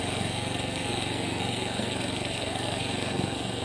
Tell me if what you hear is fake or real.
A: fake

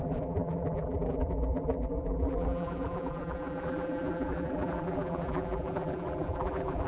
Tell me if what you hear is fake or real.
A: fake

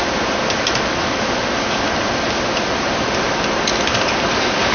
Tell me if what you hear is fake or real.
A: real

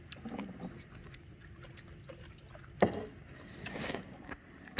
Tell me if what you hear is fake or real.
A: real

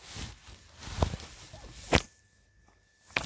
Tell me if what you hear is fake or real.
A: real